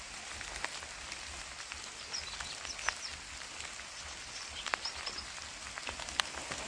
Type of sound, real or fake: real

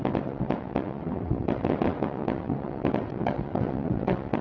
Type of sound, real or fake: fake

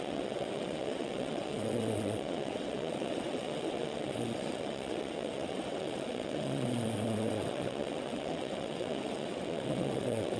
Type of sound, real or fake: fake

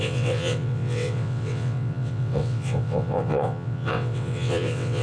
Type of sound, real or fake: fake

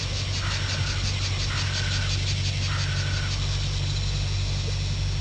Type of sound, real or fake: real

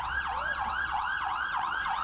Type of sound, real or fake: fake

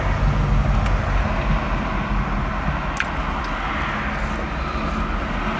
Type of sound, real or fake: real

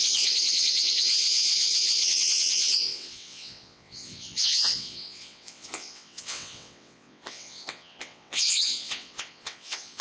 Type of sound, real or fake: fake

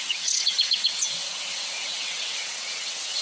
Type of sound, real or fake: fake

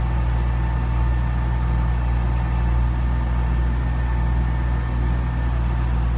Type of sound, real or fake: real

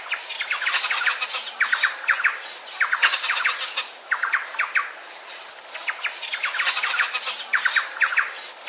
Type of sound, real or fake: real